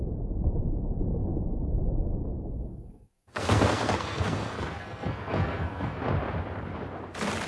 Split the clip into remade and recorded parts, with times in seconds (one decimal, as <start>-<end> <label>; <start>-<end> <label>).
0.0-2.7 recorded; 2.7-6.0 remade; 6.0-7.5 recorded